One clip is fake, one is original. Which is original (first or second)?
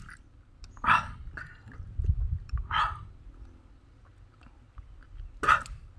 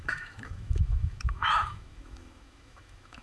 first